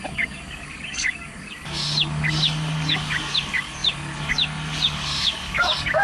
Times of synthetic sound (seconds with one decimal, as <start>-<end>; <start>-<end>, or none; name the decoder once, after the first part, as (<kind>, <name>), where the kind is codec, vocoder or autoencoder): 0.0-6.0 (codec, DAC)